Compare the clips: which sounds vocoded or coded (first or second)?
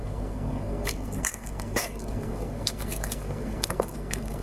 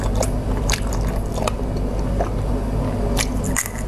first